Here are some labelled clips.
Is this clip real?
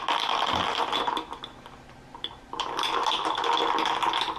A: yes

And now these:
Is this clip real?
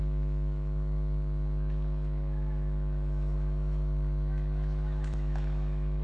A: no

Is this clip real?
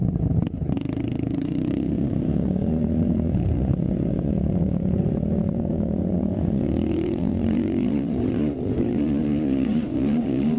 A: no